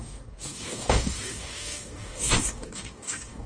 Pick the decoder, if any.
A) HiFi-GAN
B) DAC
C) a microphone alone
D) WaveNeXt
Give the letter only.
B